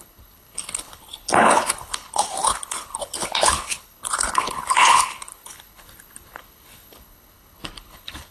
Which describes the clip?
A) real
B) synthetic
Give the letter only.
B